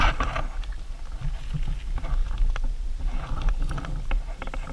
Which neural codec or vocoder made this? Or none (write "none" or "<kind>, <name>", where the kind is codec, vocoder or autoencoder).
none